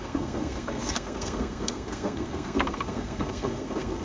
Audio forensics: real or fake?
fake